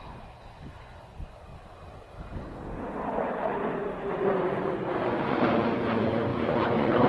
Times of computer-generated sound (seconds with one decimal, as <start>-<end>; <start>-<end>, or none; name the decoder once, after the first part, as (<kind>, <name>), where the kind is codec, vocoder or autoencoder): 0.0-1.5 (vocoder, Vocos); 3.0-3.5; 4.1-7.1